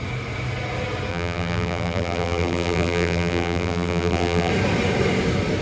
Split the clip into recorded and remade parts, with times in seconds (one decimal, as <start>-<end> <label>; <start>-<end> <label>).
0.0-1.1 recorded; 1.1-4.5 remade; 4.5-5.6 recorded